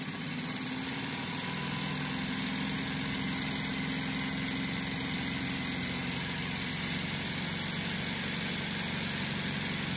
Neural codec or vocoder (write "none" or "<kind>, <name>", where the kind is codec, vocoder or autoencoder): none